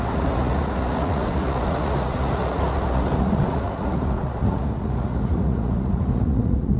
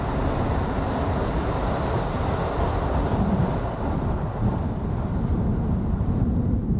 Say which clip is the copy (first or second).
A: first